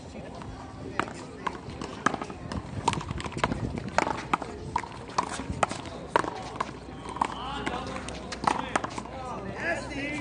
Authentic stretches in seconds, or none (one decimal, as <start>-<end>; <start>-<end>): 0.0-10.2